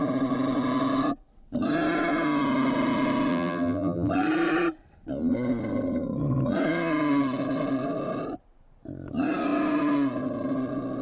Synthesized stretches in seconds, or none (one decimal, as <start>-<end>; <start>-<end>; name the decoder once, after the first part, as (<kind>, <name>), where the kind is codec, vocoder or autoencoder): 3.3-4.1 (vocoder, BigVGAN v2)

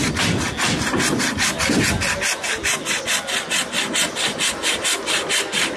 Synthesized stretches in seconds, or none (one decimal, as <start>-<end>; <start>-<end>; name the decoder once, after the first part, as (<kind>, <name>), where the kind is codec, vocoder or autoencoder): none

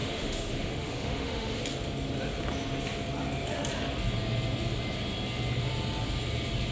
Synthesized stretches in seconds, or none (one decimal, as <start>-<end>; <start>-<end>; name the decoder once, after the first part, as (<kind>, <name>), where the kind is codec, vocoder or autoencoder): 0.0-1.6 (autoencoder, DAC-VAE)